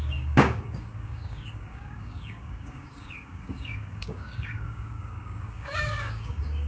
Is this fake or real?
fake